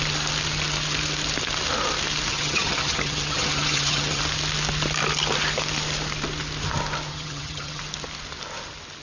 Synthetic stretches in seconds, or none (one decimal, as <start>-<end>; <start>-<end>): 2.3-4.2; 7.1-7.8